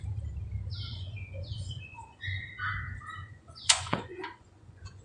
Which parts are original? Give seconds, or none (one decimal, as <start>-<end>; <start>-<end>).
0.0-0.9; 2.5-3.2